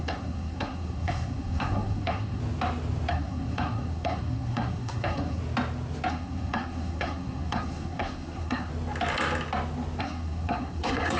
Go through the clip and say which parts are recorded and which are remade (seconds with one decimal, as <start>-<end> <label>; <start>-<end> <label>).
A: 0.0-2.4 remade; 2.4-3.1 recorded; 3.1-5.4 remade; 5.4-6.1 recorded; 6.1-8.7 remade; 8.7-10.0 recorded; 10.0-11.2 remade